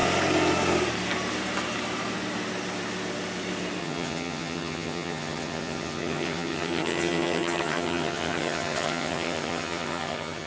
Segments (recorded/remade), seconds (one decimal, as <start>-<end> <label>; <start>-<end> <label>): 0.0-3.8 recorded; 3.8-10.5 remade